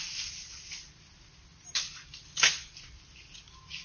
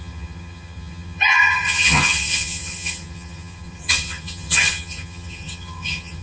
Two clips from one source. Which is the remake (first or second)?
second